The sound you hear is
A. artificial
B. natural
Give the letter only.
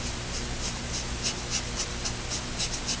B